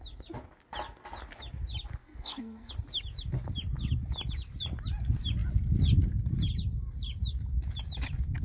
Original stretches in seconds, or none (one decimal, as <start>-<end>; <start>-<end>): 0.0-2.0; 2.7-8.4